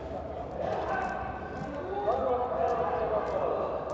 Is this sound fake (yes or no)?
no